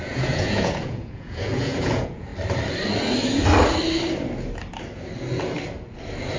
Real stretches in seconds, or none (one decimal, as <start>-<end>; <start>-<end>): 2.3-6.4